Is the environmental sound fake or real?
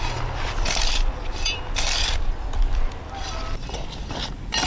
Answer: real